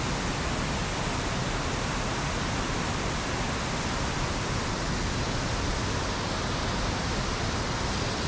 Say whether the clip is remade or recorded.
recorded